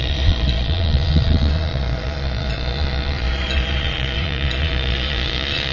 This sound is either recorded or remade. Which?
remade